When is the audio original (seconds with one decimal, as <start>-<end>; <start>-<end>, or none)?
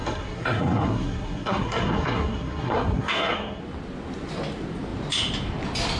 3.6-6.0